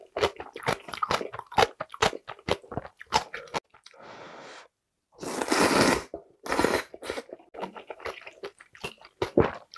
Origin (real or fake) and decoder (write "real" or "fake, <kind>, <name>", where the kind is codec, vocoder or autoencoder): real